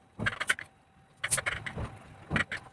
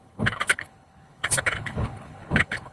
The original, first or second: first